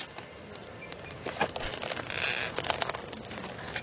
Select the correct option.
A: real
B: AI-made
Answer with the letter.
A